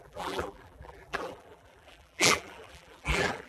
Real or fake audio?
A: fake